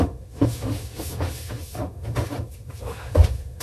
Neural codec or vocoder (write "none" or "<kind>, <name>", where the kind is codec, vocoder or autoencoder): autoencoder, DAC-VAE